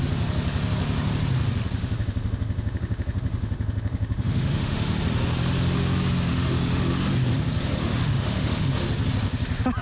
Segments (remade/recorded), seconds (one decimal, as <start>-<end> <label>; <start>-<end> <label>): 0.0-1.8 recorded; 1.8-5.0 remade; 5.0-6.3 recorded; 6.3-6.8 remade; 6.8-7.8 recorded; 7.8-8.7 remade; 8.7-9.8 recorded